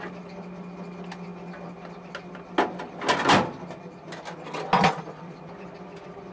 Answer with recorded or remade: recorded